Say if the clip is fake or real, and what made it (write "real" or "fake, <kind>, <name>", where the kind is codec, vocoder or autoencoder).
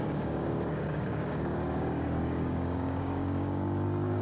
fake, codec, DAC